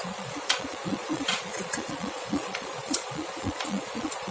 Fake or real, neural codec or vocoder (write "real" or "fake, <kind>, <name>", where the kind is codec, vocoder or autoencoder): fake, vocoder, Vocos